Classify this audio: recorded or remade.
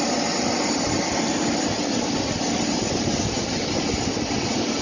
recorded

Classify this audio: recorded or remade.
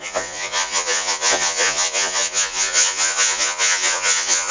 remade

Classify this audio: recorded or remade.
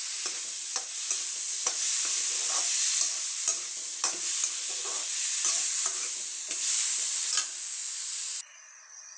recorded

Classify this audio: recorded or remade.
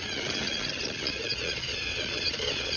remade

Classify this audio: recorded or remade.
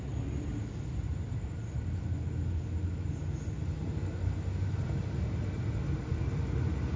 recorded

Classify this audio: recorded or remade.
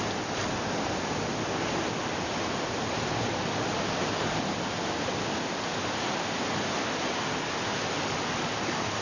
recorded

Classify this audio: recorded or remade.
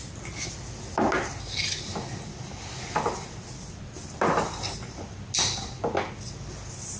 recorded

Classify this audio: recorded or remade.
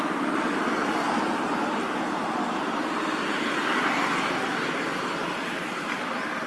recorded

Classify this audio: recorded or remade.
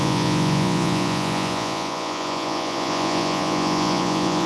remade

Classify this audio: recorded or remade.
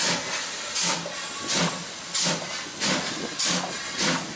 recorded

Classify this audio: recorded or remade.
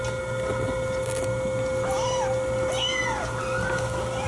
recorded